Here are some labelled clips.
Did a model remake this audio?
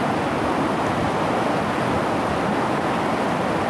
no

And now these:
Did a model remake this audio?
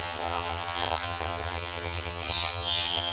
yes